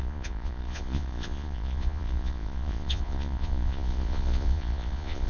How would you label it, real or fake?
fake